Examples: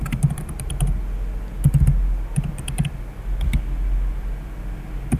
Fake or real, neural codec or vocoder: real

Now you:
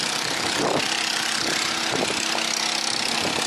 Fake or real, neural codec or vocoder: real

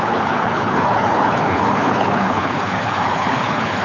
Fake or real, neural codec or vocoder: fake, codec, HILCodec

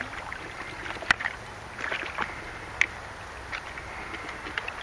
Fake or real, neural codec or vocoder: real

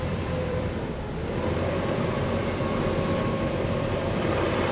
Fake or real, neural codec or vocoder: fake, vocoder, BigVGAN v2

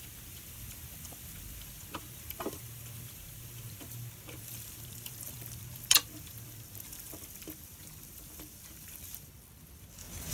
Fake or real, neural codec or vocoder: fake, vocoder, BigVGAN v2